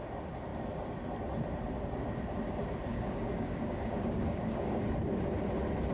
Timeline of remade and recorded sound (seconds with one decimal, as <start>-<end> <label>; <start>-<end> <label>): 0.0-2.9 recorded; 2.9-4.8 remade; 4.8-5.9 recorded